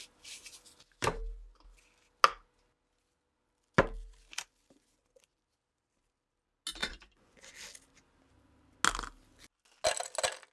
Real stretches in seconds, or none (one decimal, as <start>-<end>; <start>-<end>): 0.0-6.8; 7.5-10.5